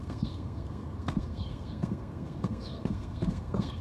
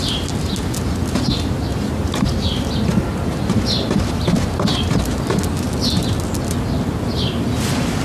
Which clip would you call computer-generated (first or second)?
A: first